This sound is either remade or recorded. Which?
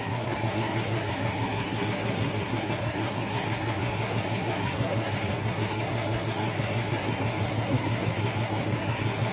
remade